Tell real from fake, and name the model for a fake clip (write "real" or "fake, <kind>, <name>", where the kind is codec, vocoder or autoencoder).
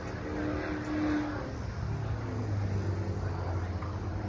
real